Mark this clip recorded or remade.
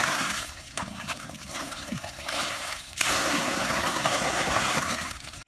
remade